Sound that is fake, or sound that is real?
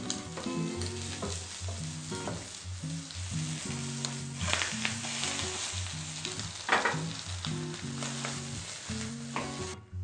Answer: real